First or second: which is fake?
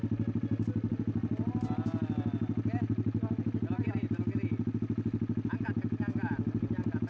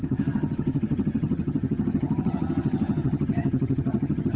second